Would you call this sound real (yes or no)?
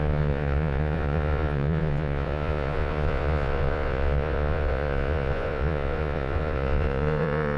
no